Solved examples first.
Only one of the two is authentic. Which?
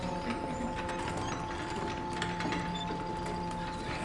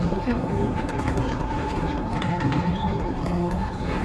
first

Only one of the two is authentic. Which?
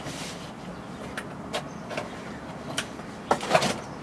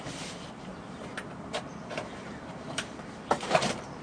first